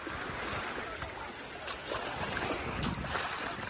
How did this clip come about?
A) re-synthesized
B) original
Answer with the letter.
B